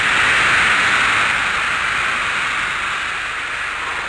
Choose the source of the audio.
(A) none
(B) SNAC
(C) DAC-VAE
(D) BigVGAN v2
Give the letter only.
A